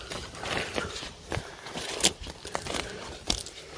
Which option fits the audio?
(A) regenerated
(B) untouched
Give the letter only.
B